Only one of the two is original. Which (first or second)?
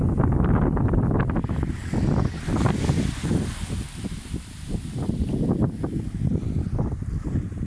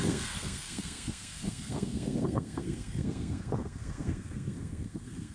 first